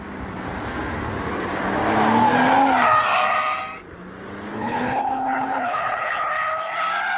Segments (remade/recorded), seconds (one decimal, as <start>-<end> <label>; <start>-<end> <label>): 0.0-4.5 recorded; 4.5-6.3 remade; 6.3-7.2 recorded